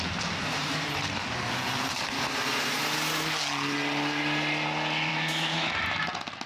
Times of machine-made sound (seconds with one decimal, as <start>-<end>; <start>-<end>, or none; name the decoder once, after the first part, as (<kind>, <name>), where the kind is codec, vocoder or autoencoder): 5.1-5.7 (autoencoder, DAC-VAE)